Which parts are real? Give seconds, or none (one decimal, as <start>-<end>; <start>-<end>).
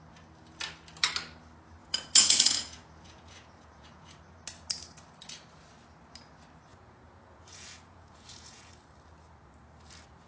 0.0-1.8; 4.2-6.7; 8.7-10.3